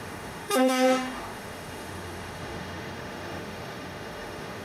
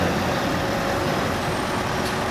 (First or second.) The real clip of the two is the second